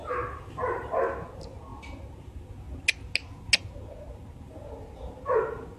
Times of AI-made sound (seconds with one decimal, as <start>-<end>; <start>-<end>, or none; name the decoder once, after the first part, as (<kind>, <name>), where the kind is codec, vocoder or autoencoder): 0.0-1.0 (vocoder, BigVGAN v2)